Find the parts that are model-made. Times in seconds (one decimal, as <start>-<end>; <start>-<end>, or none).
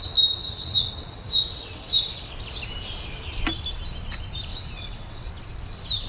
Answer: 0.4-2.3; 4.5-5.3